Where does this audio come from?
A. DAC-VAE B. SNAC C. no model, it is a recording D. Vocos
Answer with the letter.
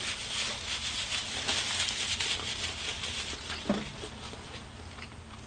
C